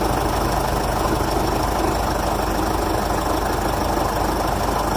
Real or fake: real